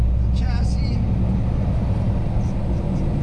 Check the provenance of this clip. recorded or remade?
recorded